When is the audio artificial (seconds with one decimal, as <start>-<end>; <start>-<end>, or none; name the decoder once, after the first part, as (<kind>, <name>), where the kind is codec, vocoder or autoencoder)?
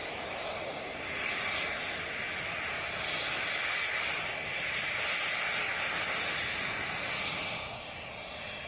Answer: none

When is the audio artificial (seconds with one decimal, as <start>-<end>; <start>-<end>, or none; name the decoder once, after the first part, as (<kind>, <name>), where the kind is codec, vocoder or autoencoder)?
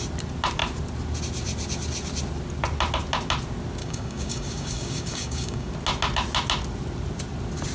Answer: 3.8-5.7 (codec, DAC)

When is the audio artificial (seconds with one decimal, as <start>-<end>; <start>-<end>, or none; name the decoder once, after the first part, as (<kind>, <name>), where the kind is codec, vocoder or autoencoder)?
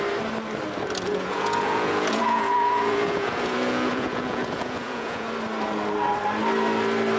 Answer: 1.1-5.3 (vocoder, Vocos)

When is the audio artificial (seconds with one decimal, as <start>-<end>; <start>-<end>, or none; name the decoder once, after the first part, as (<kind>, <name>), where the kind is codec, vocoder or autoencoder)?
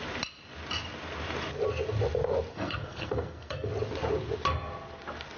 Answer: 2.5-3.7 (codec, SNAC)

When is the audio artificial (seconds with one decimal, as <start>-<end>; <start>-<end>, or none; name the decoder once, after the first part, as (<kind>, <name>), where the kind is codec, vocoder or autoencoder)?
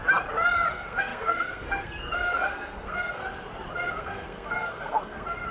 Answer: 0.7-3.2 (codec, SNAC); 3.7-5.5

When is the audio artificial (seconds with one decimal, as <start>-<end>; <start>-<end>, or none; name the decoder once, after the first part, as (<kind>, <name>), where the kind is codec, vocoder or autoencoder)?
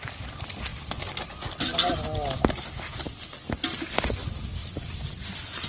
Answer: 4.6-5.3 (vocoder, BigVGAN v2)